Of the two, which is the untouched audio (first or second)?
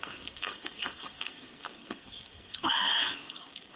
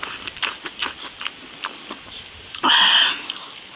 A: second